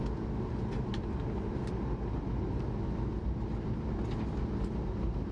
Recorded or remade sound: recorded